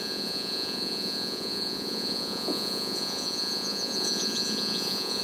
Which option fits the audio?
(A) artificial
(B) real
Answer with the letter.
A